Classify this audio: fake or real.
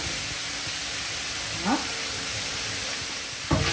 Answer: real